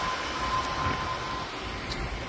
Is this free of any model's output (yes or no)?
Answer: yes